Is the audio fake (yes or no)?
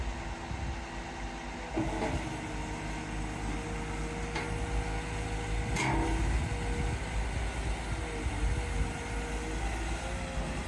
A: no